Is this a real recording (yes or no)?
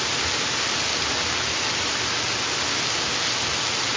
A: yes